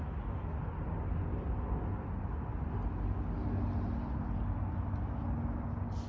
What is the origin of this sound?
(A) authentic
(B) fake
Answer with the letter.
A